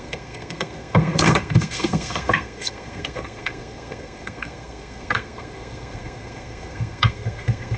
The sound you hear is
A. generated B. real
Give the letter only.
A